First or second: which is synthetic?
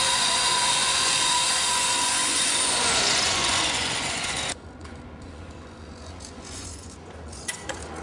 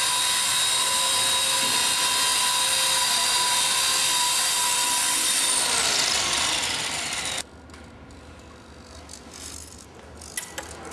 first